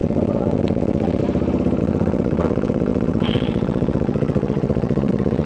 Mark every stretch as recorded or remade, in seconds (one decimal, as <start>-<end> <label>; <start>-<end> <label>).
0.0-1.2 remade; 1.2-1.8 recorded; 1.8-5.5 remade